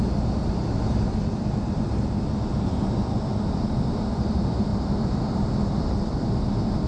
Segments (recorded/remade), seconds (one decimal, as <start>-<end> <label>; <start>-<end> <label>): 0.0-6.9 recorded